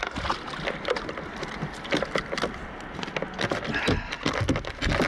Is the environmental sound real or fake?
real